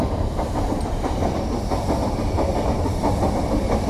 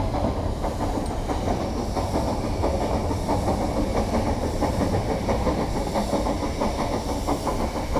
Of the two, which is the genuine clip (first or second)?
second